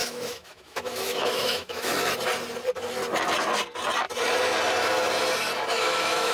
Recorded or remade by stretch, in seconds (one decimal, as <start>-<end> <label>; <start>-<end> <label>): 0.0-1.9 remade; 1.9-5.7 recorded; 5.7-6.3 remade

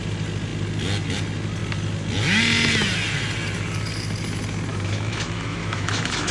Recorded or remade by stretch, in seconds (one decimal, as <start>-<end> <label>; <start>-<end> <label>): 0.0-4.7 recorded; 4.7-6.3 remade

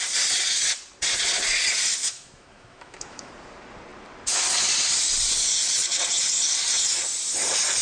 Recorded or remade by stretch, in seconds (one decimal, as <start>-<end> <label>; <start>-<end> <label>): 0.0-2.0 recorded; 2.0-3.3 remade; 3.3-7.8 recorded

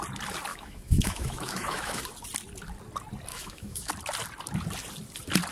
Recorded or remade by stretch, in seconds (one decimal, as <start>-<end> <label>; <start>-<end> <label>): 0.0-0.5 recorded; 0.5-2.0 remade; 2.0-3.3 recorded; 3.3-3.9 remade; 3.9-5.5 recorded

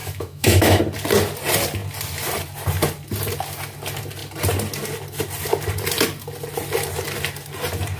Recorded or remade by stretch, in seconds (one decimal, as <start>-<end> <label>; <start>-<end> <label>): 0.0-0.8 remade; 0.8-8.0 recorded

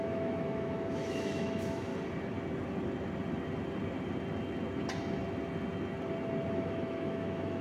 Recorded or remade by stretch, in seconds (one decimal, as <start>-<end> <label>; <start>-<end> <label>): 0.0-1.9 remade; 1.9-6.5 recorded; 6.5-7.6 remade